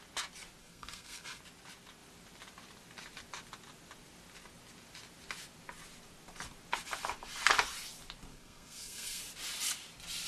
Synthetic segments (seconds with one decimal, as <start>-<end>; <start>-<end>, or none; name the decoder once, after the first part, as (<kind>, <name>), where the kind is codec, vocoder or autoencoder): 0.6-1.4 (codec, SNAC); 8.3-9.2